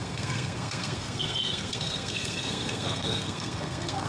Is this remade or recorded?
remade